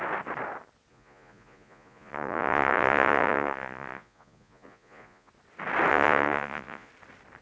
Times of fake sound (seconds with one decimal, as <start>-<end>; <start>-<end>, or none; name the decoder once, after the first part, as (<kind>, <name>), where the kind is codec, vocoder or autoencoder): 0.9-5.3 (vocoder, Vocos); 5.9-6.9